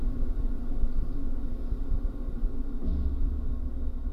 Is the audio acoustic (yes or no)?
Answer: yes